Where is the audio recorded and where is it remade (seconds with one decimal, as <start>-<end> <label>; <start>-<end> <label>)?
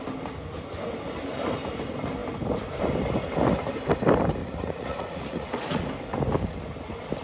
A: 0.0-4.4 recorded; 4.4-5.9 remade; 5.9-7.2 recorded